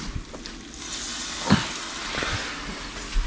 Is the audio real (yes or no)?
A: yes